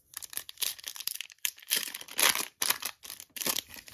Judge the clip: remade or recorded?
remade